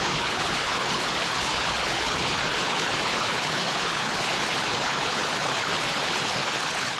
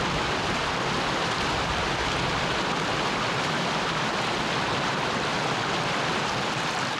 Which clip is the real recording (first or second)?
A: second